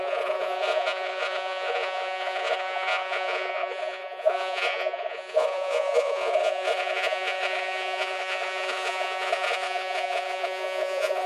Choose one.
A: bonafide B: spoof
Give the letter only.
B